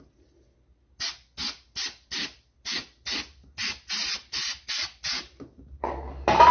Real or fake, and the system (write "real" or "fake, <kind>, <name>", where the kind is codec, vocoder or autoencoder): real